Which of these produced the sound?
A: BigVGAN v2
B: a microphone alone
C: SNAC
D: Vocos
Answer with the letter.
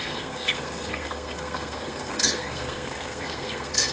C